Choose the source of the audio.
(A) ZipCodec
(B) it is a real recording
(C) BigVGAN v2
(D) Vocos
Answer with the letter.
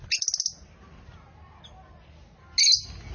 B